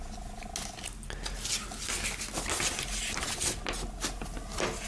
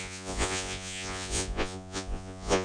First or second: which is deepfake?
second